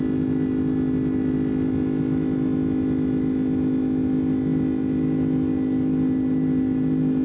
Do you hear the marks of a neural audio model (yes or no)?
no